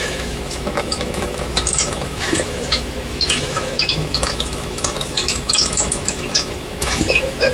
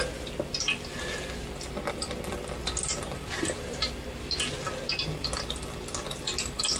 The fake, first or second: first